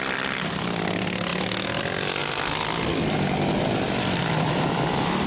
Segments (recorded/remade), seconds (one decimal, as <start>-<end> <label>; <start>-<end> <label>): 0.0-1.3 remade; 1.3-1.8 recorded; 1.8-2.2 remade; 2.2-4.2 recorded; 4.2-5.3 remade